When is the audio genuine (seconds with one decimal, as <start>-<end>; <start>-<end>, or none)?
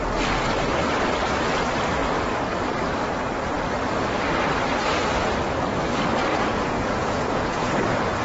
0.0-6.3; 7.7-8.2